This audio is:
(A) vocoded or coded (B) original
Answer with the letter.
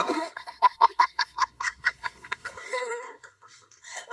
A